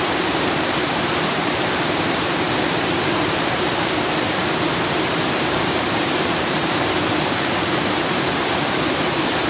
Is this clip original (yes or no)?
no